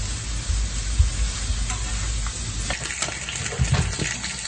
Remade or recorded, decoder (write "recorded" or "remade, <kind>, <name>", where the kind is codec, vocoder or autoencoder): recorded